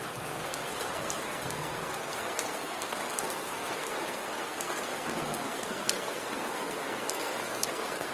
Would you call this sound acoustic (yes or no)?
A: no